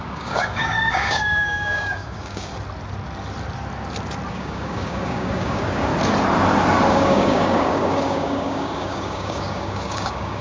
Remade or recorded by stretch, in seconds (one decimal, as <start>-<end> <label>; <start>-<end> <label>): 0.0-2.5 remade; 2.5-4.3 recorded; 4.3-5.9 remade; 5.9-6.9 recorded; 6.9-10.4 remade